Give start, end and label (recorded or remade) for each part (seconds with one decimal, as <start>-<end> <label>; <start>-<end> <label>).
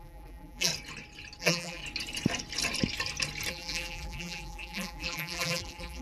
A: 0.0-0.7 remade; 0.7-1.4 recorded; 1.4-1.8 remade; 1.8-3.5 recorded; 3.5-6.0 remade